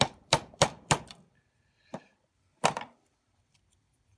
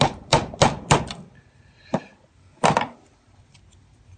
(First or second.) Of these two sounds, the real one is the second